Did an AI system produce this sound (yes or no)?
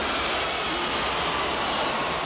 no